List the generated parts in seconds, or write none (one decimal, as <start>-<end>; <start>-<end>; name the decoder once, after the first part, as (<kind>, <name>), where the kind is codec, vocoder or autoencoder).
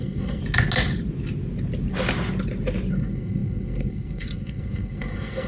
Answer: 0.0-0.4 (codec, SNAC); 2.9-5.5